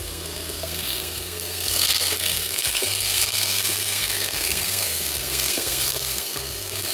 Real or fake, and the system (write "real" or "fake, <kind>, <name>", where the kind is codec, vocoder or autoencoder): fake, codec, SNAC